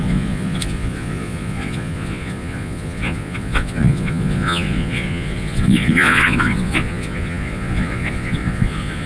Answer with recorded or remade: remade